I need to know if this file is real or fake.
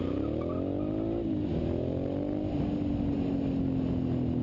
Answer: real